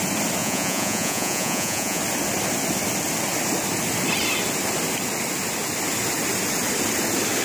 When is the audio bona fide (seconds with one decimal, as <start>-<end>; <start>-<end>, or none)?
0.0-0.4; 2.0-7.4